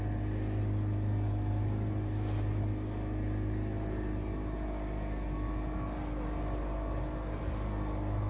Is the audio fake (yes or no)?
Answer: no